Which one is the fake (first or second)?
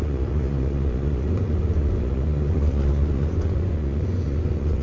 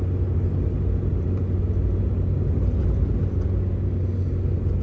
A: first